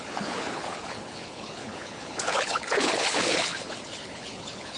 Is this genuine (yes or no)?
no